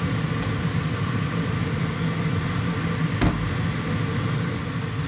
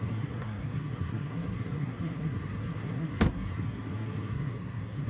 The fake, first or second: second